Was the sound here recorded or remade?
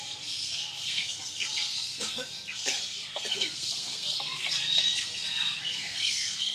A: remade